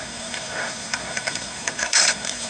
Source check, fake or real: fake